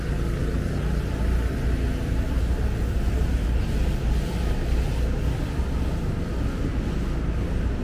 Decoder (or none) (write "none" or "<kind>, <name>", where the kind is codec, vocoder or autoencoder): none